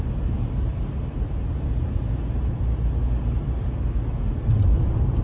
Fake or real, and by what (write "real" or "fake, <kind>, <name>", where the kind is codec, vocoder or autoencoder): real